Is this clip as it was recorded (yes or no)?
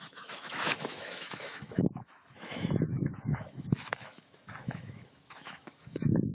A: no